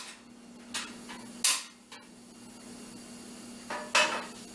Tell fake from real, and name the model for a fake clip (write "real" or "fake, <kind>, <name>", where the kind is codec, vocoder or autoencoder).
real